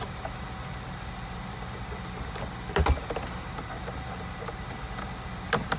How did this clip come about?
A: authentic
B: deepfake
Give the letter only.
A